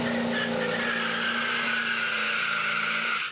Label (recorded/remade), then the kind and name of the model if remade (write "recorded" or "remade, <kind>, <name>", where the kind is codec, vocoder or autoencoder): recorded